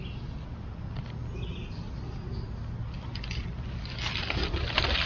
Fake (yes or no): no